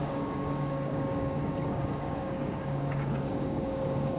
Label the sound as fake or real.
fake